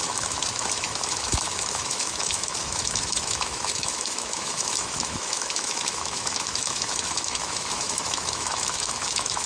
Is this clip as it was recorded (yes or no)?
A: no